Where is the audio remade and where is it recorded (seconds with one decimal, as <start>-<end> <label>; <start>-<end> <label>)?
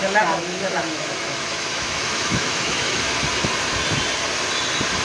0.0-3.0 remade; 3.0-5.0 recorded